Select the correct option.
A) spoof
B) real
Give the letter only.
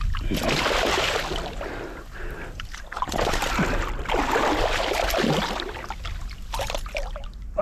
B